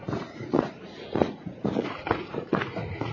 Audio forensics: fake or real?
fake